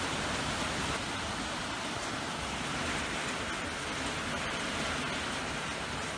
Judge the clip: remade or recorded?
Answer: recorded